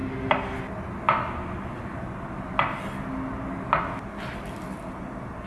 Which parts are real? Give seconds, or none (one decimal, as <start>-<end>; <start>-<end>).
0.0-5.5